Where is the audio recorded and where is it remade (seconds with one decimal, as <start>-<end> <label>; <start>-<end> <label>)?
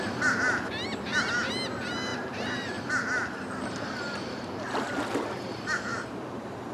0.0-2.1 recorded; 2.1-2.8 remade; 2.8-5.9 recorded; 5.9-6.7 remade